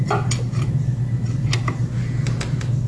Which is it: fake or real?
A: real